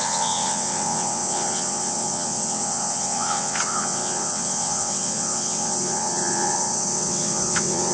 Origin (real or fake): fake